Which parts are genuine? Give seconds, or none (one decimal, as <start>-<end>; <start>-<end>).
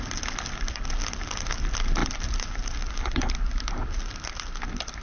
0.0-5.0